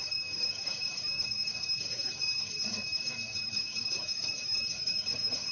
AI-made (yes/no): yes